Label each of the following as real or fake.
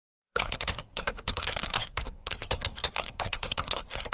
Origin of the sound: fake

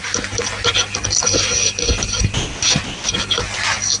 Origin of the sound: real